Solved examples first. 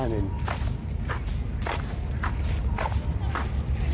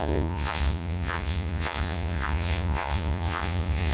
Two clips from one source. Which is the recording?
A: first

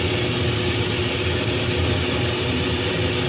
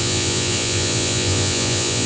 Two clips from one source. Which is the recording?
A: first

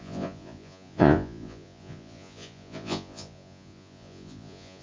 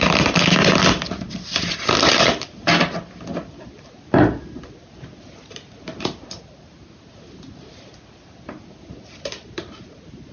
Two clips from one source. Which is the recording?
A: second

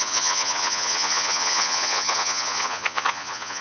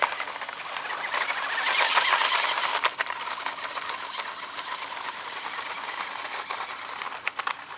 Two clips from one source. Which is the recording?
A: second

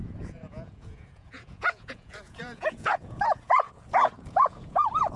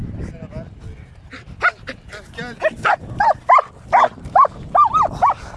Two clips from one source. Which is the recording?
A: second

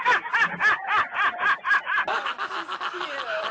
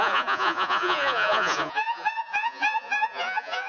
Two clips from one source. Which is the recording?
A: first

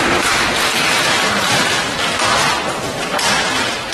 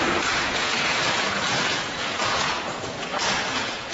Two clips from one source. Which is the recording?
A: first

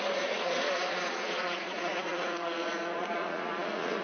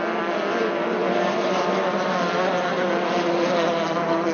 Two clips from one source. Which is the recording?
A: second